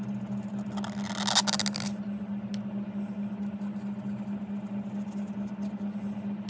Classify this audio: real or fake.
real